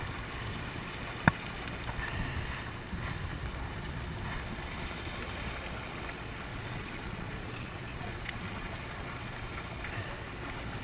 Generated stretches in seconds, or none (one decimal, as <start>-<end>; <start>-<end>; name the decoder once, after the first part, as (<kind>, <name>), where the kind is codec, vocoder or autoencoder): 6.5-9.3 (vocoder, Vocos)